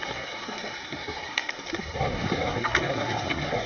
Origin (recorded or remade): remade